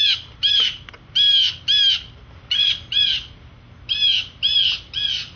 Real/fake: real